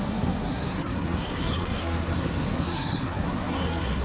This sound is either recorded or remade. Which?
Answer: remade